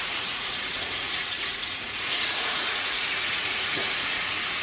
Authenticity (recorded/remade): remade